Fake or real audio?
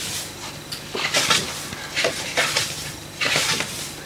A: real